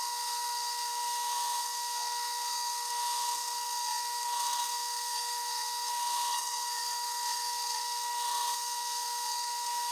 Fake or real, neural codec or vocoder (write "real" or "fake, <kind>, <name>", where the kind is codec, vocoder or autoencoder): fake, codec, SNAC